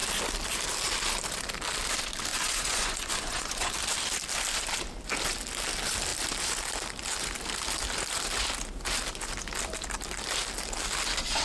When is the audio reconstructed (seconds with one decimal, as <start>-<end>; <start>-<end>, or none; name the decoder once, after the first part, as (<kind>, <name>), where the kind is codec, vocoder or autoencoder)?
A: 2.3-3.7 (vocoder, Vocos)